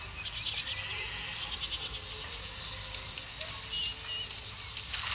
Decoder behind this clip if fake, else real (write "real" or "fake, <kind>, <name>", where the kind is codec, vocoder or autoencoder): real